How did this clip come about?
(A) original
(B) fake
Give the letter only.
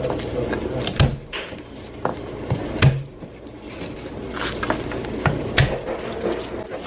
A